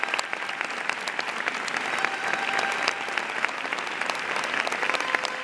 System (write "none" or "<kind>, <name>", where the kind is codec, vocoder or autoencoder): none